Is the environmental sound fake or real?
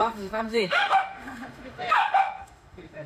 fake